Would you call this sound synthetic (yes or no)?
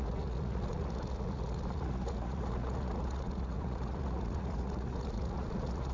yes